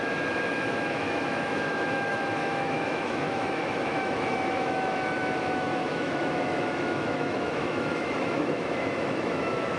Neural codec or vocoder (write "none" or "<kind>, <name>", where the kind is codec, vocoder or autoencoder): autoencoder, DAC-VAE